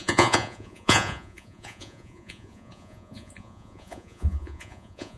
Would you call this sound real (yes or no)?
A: no